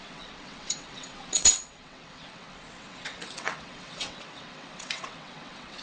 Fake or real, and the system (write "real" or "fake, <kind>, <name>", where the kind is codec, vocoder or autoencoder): fake, vocoder, WaveNeXt